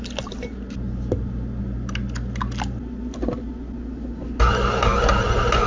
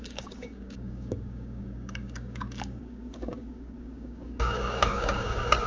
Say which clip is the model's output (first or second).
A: second